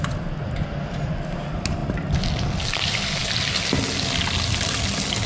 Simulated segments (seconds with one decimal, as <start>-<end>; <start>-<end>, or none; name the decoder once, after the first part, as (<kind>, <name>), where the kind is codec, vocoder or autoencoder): none